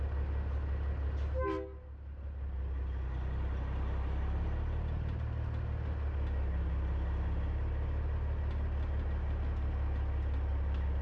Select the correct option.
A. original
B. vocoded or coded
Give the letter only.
A